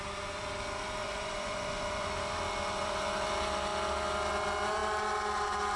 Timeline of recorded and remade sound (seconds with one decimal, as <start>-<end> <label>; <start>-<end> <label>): 0.0-1.0 recorded; 1.0-2.1 remade; 2.1-5.8 recorded